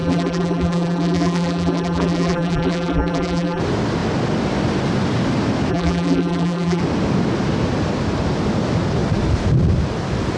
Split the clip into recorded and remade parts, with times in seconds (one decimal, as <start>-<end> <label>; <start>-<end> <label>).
0.0-3.6 remade; 3.6-5.7 recorded; 5.7-6.8 remade; 6.8-10.4 recorded